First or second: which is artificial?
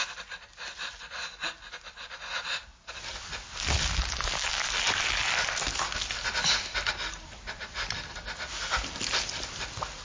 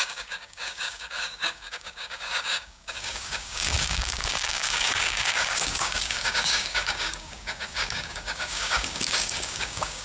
second